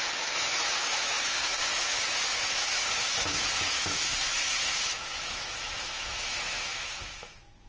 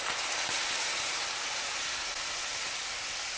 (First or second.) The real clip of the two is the second